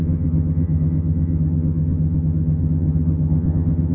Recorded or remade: remade